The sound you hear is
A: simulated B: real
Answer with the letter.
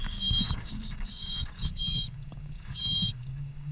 A